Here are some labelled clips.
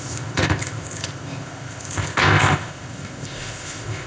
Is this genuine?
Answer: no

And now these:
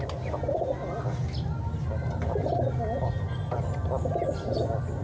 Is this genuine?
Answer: yes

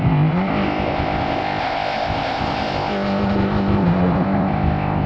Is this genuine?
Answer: no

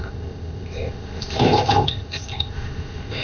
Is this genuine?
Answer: no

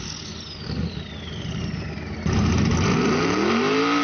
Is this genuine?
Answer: yes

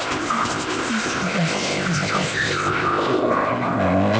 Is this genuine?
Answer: no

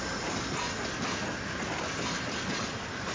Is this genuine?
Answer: yes